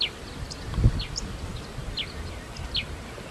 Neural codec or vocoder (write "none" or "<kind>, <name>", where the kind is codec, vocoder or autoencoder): none